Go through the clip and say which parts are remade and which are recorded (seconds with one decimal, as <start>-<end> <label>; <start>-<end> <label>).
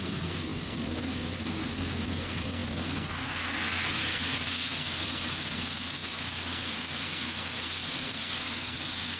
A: 0.0-9.2 remade